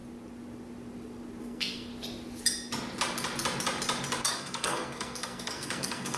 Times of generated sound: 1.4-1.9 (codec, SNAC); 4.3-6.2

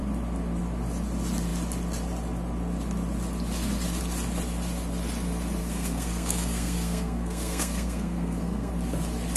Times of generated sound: 5.6-8.7 (codec, SNAC)

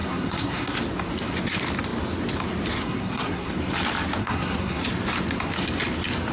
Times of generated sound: 0.0-0.8 (codec, SNAC); 2.8-3.5; 4.2-4.8

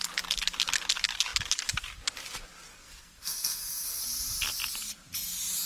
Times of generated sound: 2.7-4.0 (codec, SNAC)

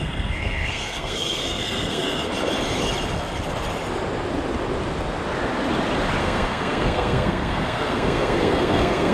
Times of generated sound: 0.0-2.3 (codec, SNAC); 6.2-9.1

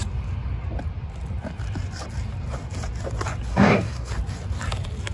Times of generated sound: 3.5-4.1 (codec, SNAC)

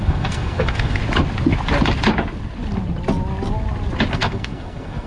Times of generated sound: 0.0-1.0 (codec, SNAC); 4.1-5.1

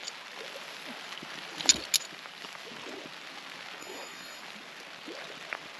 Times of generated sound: 3.8-4.4 (codec, SNAC)